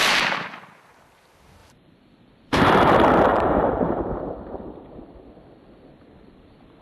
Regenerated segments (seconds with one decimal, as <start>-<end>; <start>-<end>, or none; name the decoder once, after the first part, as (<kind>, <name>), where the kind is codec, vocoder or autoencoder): 0.0-0.6 (vocoder, BigVGAN v2); 1.6-2.6; 3.3-5.0